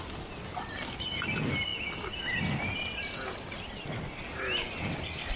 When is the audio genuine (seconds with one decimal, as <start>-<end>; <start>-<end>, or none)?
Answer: 0.0-5.4